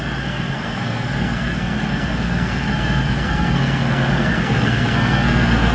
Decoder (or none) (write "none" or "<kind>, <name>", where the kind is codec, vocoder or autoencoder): codec, SNAC